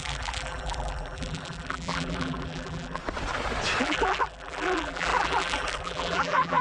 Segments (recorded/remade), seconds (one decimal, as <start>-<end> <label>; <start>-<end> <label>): 0.0-3.0 remade; 3.0-3.8 recorded; 3.8-6.6 remade